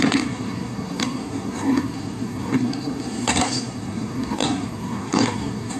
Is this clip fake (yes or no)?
yes